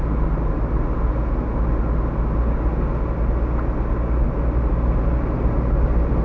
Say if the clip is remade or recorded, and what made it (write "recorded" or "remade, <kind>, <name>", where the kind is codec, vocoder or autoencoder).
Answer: recorded